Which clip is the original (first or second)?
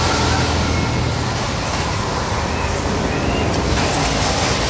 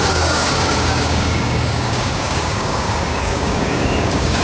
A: first